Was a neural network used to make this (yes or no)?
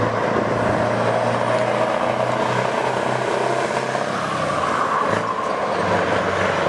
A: no